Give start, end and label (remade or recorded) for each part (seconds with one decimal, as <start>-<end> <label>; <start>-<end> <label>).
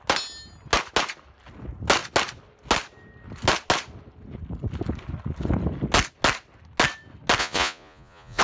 0.0-7.4 recorded; 7.4-8.4 remade